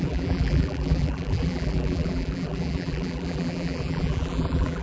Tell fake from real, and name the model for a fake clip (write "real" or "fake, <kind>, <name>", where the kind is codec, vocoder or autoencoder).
fake, vocoder, BigVGAN v2